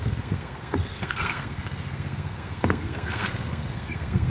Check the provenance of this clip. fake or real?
fake